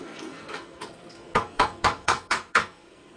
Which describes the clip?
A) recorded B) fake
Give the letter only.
B